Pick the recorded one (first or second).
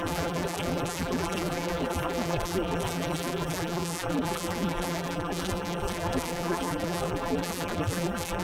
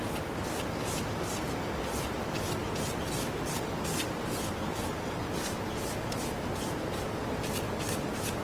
second